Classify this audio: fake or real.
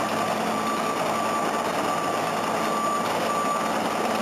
real